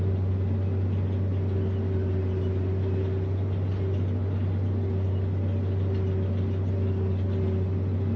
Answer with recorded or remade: recorded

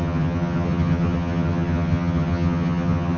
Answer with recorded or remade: remade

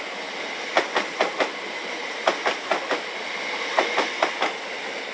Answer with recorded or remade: recorded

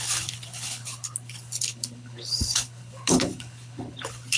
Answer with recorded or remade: remade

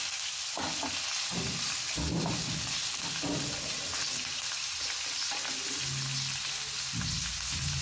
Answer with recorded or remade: recorded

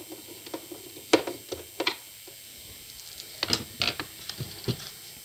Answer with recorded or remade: recorded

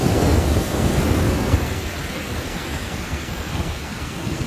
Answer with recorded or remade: remade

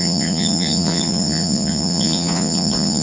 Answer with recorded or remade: remade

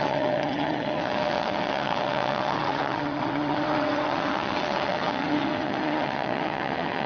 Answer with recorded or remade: remade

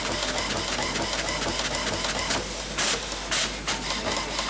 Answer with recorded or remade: recorded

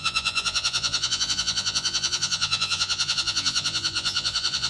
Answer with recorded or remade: remade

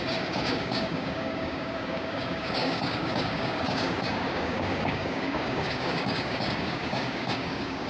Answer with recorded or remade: remade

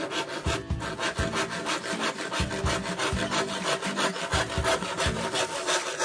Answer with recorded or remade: recorded